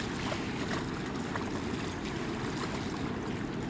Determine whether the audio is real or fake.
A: real